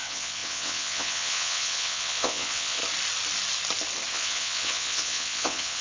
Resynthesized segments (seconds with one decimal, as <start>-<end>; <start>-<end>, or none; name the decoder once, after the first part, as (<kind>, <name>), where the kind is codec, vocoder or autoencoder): 0.0-2.8 (vocoder, WaveNeXt); 4.1-5.8